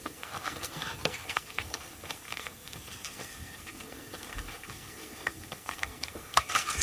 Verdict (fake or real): fake